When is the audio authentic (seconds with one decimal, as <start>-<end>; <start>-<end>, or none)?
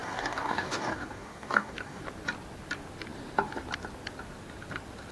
2.0-5.1